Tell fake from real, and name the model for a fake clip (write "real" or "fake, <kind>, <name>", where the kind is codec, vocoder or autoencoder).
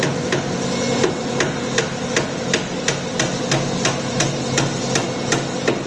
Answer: real